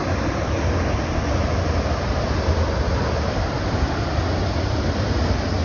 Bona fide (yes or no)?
yes